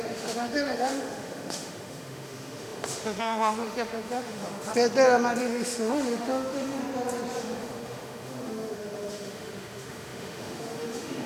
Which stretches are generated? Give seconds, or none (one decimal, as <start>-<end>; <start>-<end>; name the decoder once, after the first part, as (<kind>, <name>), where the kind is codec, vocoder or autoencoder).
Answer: 0.0-4.7 (autoencoder, DAC-VAE); 5.4-6.8; 7.4-11.3